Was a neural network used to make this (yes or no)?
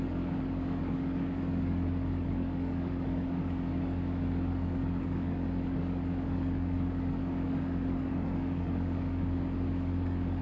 yes